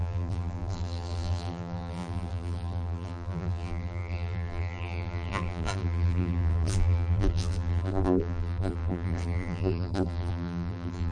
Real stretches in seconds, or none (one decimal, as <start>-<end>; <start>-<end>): none